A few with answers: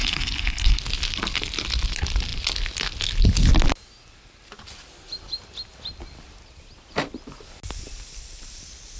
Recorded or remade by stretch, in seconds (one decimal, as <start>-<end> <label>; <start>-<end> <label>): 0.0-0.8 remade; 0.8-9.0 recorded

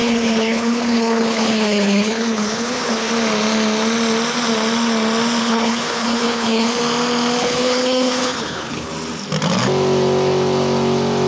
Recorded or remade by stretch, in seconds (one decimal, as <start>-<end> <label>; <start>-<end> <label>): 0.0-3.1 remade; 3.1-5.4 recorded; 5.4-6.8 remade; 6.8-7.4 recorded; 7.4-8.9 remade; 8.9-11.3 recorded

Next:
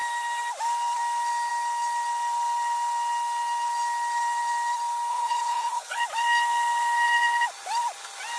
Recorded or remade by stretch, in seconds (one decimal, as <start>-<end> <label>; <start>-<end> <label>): 0.0-5.1 recorded; 5.1-6.0 remade; 6.0-8.4 recorded

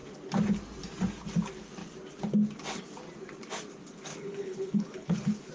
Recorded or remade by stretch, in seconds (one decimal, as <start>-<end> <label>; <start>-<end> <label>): 0.0-4.1 recorded; 4.1-5.5 remade

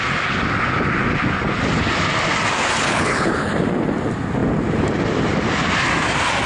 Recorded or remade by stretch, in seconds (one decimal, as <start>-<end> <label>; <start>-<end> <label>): 0.0-2.8 recorded; 2.8-3.5 remade; 3.5-6.5 recorded

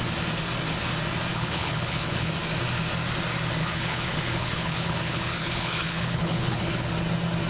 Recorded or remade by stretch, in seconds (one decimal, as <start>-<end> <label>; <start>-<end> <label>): 0.0-1.3 recorded; 1.3-2.3 remade; 2.3-3.6 recorded; 3.6-6.9 remade; 6.9-7.5 recorded

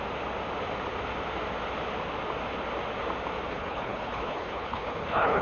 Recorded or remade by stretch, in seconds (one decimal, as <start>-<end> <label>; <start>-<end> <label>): 0.0-3.5 recorded; 3.5-5.4 remade

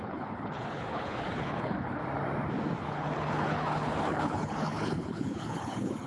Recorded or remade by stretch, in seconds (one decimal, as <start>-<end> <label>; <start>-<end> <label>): 0.0-2.0 remade; 2.0-2.8 recorded; 2.8-6.1 remade